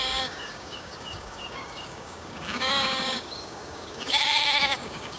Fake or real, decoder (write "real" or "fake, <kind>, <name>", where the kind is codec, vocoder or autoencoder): fake, codec, DAC